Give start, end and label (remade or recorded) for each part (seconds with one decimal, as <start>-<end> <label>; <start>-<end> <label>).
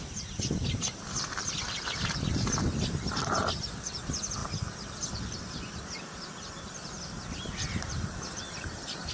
0.0-9.1 remade